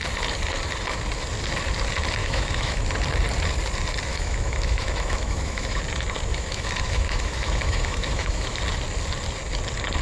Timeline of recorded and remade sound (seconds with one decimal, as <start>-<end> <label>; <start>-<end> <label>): 0.0-2.2 recorded; 2.2-2.8 remade; 2.8-4.1 recorded; 4.1-5.8 remade; 5.8-6.3 recorded; 6.3-8.6 remade; 8.6-10.0 recorded